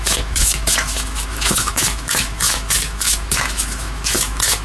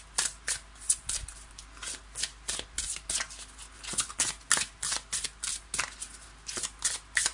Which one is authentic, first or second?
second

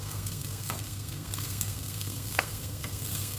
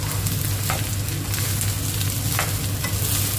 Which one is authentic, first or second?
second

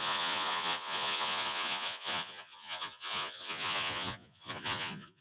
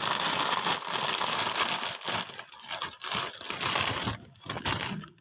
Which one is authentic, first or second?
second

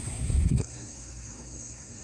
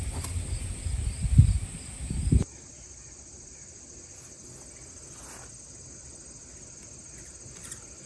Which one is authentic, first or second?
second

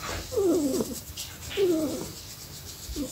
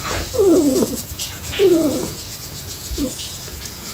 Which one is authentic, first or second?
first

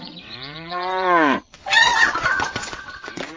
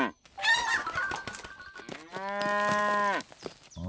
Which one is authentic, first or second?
second